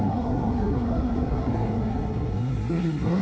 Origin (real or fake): fake